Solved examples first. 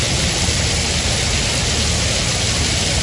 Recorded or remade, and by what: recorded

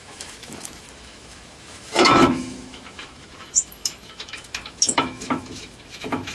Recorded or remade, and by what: remade, autoencoder, DAC-VAE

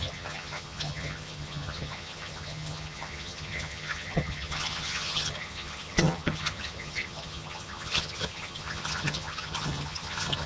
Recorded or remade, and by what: remade, vocoder, HiFi-GAN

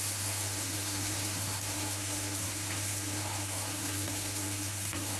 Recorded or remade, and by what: remade, codec, SNAC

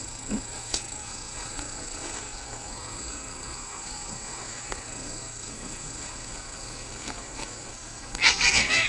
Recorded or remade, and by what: remade, codec, SNAC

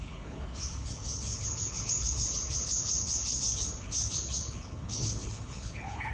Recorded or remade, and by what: remade, codec, HILCodec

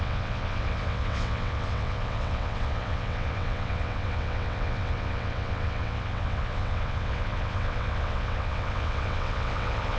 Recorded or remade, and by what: remade, vocoder, WaveNeXt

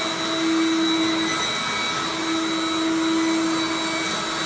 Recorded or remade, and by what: recorded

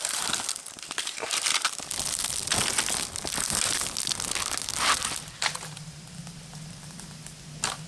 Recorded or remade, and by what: recorded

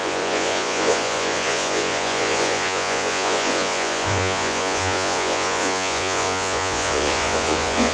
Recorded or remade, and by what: remade, vocoder, Vocos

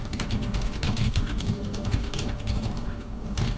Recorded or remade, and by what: remade, codec, DAC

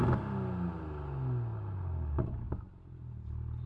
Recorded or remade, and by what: recorded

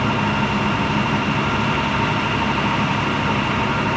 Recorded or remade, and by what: recorded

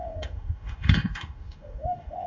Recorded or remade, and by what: remade, autoencoder, DAC-VAE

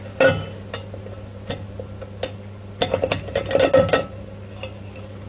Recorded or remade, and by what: recorded